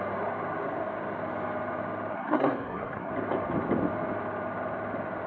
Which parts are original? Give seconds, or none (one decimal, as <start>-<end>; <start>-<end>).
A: 0.0-2.1; 3.1-5.3